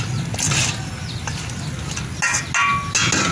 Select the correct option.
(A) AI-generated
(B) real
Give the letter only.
B